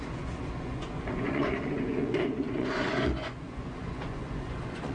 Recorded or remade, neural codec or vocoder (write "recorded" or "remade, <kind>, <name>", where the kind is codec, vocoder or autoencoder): remade, vocoder, Vocos